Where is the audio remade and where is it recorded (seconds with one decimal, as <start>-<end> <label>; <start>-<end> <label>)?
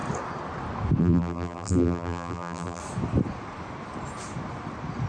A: 0.0-1.0 recorded; 1.0-2.8 remade; 2.8-5.1 recorded